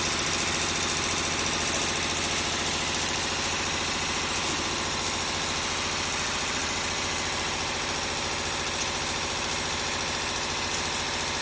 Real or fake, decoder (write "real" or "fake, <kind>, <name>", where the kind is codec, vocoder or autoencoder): real